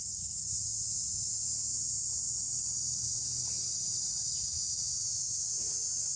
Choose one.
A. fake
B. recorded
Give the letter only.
B